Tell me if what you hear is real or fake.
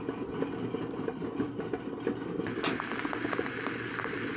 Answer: real